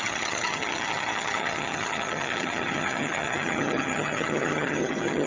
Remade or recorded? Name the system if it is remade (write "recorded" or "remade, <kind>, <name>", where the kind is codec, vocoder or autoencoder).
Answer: remade, vocoder, HiFi-GAN